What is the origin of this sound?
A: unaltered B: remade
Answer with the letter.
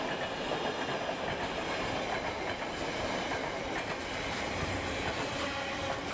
A